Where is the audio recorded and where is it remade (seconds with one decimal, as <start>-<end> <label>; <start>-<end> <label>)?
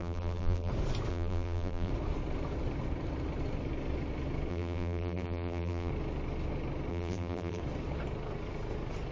0.0-0.7 remade; 0.7-1.1 recorded; 1.1-1.9 remade; 1.9-4.5 recorded; 4.5-5.9 remade; 5.9-6.9 recorded; 6.9-7.6 remade; 7.6-9.1 recorded